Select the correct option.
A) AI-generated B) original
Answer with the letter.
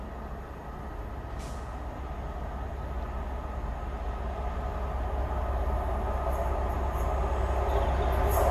B